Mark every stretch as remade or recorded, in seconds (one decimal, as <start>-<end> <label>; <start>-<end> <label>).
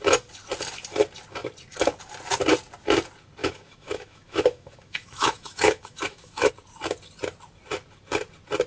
0.0-3.4 recorded; 3.4-6.5 remade; 6.5-8.7 recorded